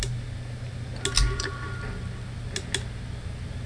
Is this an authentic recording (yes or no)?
yes